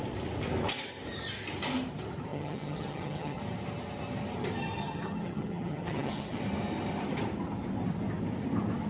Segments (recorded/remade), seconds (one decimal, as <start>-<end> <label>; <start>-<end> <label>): 0.0-2.3 recorded; 2.3-3.4 remade; 3.4-4.8 recorded; 4.8-6.4 remade; 6.4-8.9 recorded